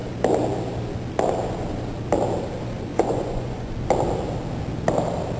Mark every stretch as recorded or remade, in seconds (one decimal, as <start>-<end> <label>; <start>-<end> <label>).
0.0-2.9 recorded; 2.9-3.7 remade; 3.7-5.4 recorded